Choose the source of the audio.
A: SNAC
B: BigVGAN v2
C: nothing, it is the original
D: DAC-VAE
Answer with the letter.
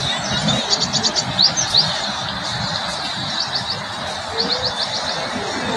C